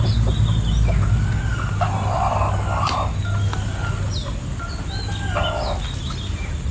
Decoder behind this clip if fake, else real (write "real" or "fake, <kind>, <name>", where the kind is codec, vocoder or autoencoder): real